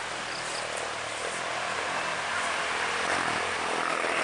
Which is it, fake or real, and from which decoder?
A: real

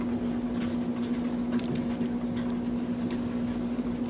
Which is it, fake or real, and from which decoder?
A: real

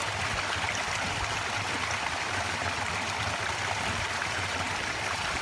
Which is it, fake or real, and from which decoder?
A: real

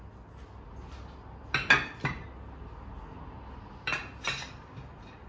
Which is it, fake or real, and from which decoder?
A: real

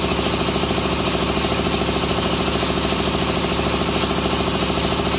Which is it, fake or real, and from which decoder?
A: real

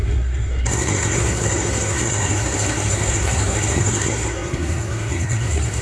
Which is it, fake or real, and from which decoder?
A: fake, codec, SNAC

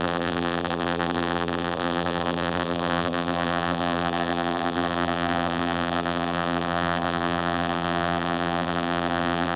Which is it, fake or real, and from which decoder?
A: fake, vocoder, BigVGAN v2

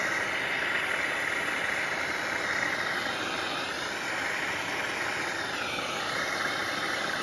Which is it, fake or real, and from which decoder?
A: fake, vocoder, BigVGAN v2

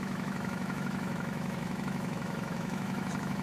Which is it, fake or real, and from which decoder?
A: fake, autoencoder, DAC-VAE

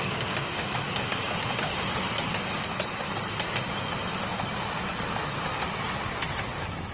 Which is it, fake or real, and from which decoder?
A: real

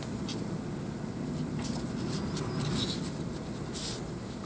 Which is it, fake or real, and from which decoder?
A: real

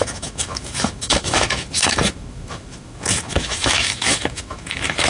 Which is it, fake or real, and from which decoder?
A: fake, autoencoder, DAC-VAE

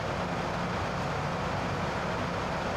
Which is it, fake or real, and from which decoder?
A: real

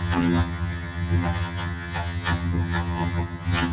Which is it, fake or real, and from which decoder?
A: fake, vocoder, HiFi-GAN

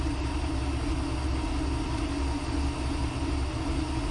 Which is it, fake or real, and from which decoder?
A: real